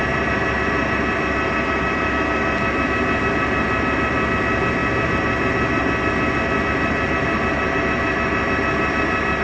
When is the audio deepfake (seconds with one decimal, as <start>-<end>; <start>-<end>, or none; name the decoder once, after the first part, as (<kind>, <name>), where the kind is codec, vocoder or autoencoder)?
none